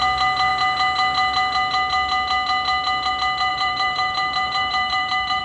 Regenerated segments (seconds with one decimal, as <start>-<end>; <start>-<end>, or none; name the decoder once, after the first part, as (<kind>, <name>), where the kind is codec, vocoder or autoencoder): 3.5-5.4 (vocoder, BigVGAN v2)